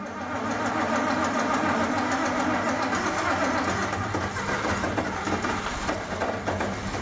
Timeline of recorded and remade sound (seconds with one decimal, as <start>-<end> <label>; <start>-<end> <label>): 0.0-7.0 recorded